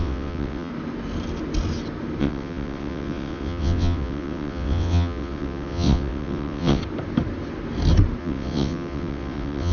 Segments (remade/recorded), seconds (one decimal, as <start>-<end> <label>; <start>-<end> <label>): 0.0-0.7 remade; 0.7-2.2 recorded; 2.2-6.8 remade; 6.8-8.2 recorded; 8.2-9.7 remade